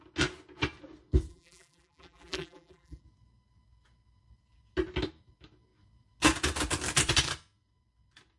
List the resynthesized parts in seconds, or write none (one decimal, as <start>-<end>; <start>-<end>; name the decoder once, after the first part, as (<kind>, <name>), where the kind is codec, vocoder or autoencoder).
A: 1.3-3.0 (vocoder, BigVGAN v2)